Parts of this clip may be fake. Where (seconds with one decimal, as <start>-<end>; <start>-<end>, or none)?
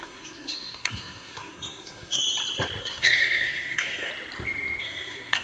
0.0-2.2; 2.8-4.1; 4.8-5.4